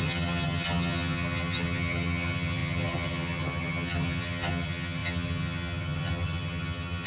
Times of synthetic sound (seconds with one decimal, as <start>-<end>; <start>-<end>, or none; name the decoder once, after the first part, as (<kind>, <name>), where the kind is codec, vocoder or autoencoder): 0.0-7.1 (vocoder, HiFi-GAN)